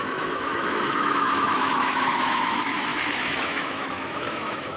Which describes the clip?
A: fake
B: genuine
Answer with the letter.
A